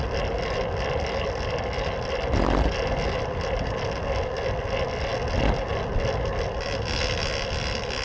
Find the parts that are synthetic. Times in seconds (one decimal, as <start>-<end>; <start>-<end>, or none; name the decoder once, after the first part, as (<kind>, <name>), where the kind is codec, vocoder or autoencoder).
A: none